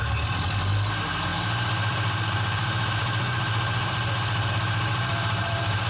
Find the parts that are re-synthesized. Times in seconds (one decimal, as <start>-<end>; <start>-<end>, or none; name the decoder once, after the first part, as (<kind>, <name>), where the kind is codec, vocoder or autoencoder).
1.3-4.5 (vocoder, BigVGAN v2); 4.9-5.9